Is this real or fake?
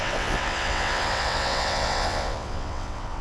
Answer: fake